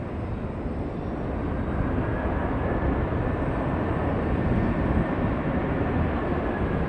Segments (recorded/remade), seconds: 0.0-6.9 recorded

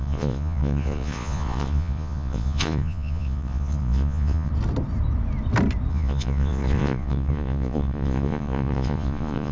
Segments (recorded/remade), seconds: 0.0-4.5 remade; 4.5-5.9 recorded; 5.9-9.5 remade

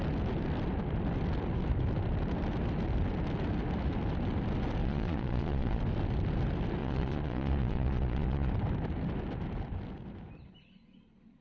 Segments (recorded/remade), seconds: 0.0-4.8 recorded; 4.8-5.8 remade; 5.8-6.8 recorded; 6.8-8.5 remade; 8.5-11.4 recorded

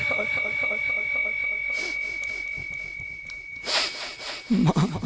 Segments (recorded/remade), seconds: 0.0-3.1 recorded; 3.1-4.5 remade; 4.5-5.1 recorded

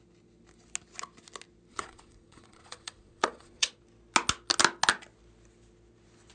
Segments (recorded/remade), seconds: 0.0-1.7 recorded; 1.7-3.8 remade; 3.8-6.3 recorded

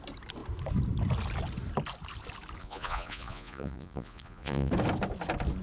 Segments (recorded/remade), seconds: 0.0-2.6 recorded; 2.6-4.7 remade; 4.7-5.6 recorded

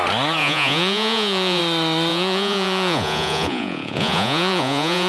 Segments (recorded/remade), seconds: 0.0-0.4 recorded; 0.4-1.6 remade; 1.6-2.1 recorded; 2.1-5.1 remade